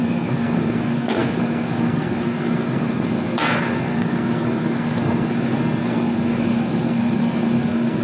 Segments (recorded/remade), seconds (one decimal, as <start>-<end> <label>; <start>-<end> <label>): 0.0-8.0 remade